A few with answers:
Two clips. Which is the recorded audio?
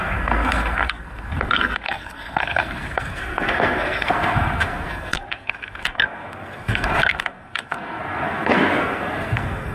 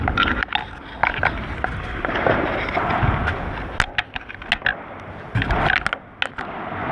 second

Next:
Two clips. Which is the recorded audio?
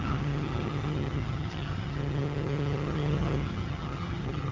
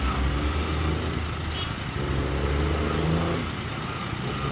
second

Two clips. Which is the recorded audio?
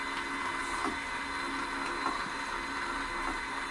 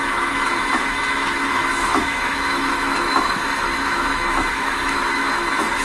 first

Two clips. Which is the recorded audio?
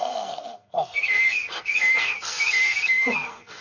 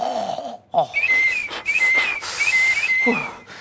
second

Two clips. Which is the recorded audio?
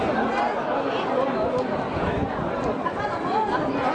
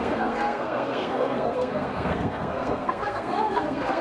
first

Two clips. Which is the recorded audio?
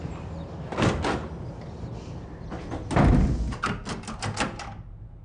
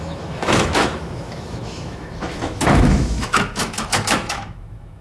first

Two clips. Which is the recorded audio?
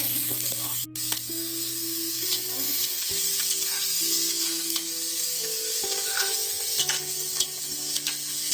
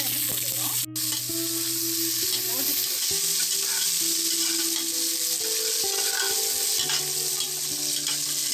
second